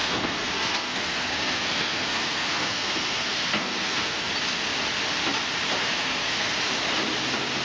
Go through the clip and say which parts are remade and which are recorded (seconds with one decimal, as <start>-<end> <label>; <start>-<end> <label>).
0.0-4.3 remade; 4.3-5.8 recorded; 5.8-6.6 remade; 6.6-7.6 recorded